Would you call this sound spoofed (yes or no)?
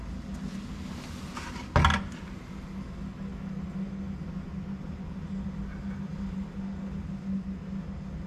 no